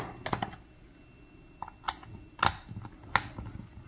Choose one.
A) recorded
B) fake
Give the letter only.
A